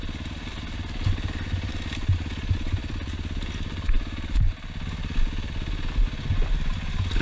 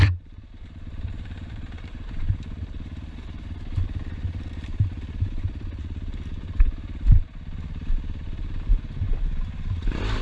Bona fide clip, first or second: first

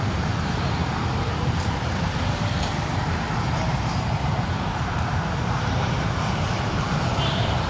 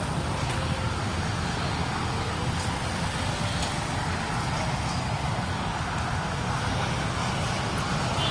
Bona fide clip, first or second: second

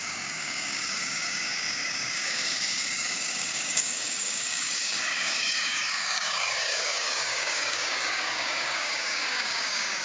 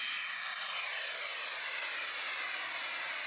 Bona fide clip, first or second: second